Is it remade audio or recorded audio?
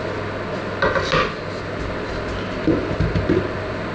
recorded